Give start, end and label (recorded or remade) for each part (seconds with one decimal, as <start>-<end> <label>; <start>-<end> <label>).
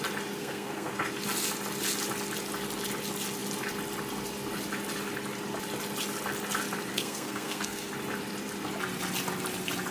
0.0-0.4 recorded; 0.4-0.9 remade; 0.9-6.9 recorded; 6.9-7.9 remade; 7.9-9.9 recorded